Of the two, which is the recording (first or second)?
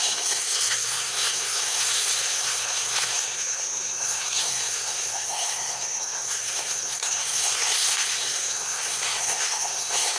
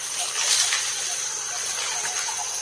second